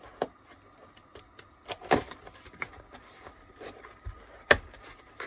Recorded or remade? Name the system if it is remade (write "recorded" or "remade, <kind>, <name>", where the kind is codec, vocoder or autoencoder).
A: recorded